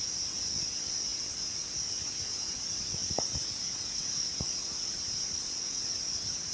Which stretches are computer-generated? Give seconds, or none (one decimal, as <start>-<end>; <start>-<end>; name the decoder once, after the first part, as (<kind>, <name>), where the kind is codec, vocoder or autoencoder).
0.0-6.5 (vocoder, Vocos)